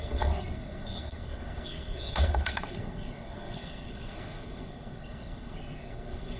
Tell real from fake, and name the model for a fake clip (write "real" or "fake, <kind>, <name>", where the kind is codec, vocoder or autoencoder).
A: fake, codec, SNAC